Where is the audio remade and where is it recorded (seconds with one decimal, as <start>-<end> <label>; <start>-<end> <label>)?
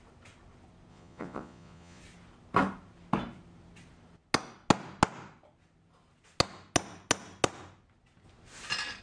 0.0-0.9 recorded; 0.9-2.0 remade; 2.0-9.0 recorded